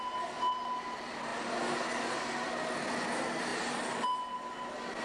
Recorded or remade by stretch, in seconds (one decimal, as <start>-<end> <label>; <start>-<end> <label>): 0.0-5.0 recorded